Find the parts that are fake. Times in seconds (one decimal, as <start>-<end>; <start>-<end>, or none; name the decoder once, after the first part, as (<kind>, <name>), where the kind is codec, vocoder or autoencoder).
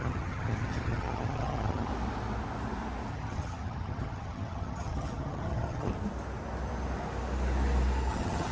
0.0-1.9 (vocoder, HiFi-GAN); 3.1-5.9; 8.1-8.5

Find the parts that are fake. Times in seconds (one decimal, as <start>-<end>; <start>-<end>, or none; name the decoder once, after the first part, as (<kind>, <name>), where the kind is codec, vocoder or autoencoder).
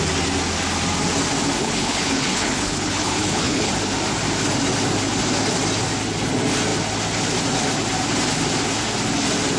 1.6-3.7 (codec, HILCodec)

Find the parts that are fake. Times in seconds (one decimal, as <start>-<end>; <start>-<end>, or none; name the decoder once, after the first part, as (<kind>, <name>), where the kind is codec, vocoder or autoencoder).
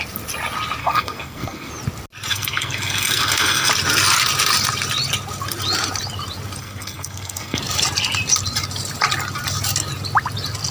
0.8-1.7 (codec, SNAC); 2.3-3.7; 6.6-7.6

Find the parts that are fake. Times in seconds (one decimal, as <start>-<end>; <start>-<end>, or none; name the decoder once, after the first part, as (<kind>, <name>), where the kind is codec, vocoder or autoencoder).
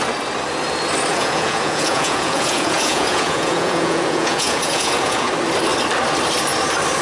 1.1-5.3 (vocoder, Vocos)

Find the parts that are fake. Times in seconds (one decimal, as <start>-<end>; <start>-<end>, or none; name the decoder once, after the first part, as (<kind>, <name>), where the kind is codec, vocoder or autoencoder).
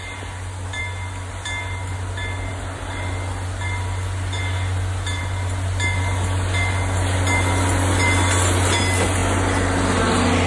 none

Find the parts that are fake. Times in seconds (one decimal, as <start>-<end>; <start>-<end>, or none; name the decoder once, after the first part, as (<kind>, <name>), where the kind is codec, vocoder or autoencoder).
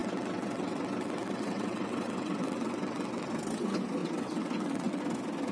0.0-3.3 (vocoder, WaveNeXt); 4.0-5.0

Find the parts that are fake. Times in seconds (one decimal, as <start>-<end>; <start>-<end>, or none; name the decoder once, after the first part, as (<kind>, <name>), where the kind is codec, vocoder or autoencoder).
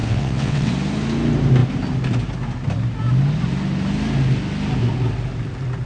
0.0-0.7 (vocoder, WaveNeXt)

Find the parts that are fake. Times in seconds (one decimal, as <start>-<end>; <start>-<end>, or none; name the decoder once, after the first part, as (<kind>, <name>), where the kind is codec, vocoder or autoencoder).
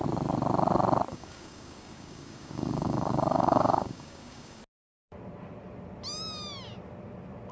1.1-4.6 (codec, DAC)